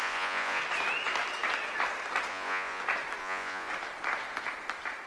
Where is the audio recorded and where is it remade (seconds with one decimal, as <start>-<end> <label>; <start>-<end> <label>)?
0.0-0.6 remade; 0.6-2.3 recorded; 2.3-2.8 remade; 2.8-3.2 recorded; 3.2-3.7 remade; 3.7-5.1 recorded